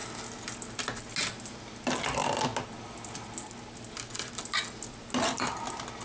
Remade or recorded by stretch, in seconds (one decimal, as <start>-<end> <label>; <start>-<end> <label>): 0.0-6.0 recorded